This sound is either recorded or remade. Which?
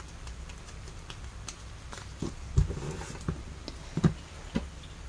recorded